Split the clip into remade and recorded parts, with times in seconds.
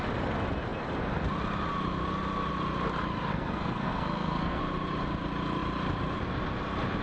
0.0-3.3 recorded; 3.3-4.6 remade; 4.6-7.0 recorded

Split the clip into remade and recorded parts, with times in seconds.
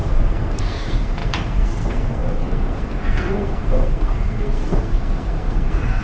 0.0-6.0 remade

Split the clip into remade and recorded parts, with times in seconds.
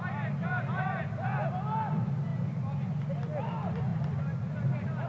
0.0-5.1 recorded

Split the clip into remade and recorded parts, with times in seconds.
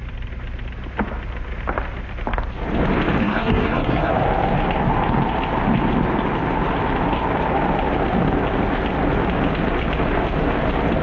0.0-3.2 recorded; 3.2-4.1 remade; 4.1-11.0 recorded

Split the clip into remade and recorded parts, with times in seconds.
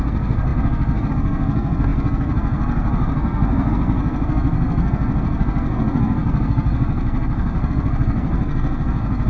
0.0-9.3 remade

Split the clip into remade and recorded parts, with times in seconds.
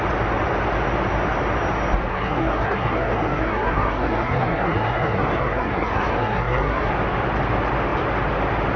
0.0-2.1 recorded; 2.1-6.9 remade; 6.9-8.8 recorded